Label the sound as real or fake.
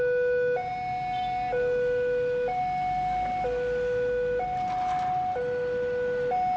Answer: real